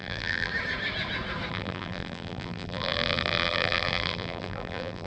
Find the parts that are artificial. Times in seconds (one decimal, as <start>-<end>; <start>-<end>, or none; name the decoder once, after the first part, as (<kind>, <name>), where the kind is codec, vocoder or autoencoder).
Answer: 0.0-0.5 (vocoder, BigVGAN v2); 1.5-5.1